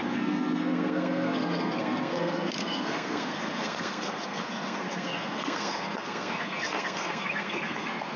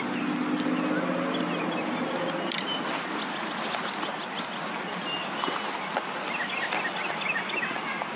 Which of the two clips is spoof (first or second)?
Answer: first